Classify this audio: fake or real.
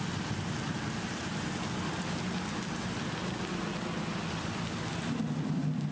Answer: real